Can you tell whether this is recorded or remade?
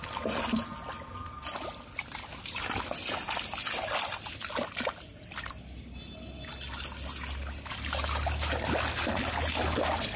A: recorded